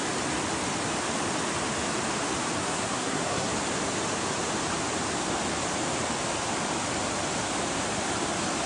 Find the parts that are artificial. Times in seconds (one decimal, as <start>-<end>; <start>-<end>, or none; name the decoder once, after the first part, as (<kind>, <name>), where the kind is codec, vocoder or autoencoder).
2.6-3.5 (codec, SNAC)